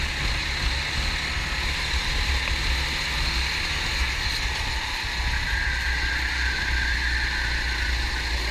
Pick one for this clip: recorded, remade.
recorded